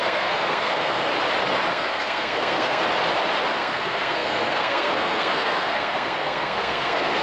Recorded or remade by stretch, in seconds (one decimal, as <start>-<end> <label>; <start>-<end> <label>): 0.0-1.1 remade; 1.1-1.7 recorded; 1.7-2.8 remade; 2.8-3.5 recorded; 3.5-7.2 remade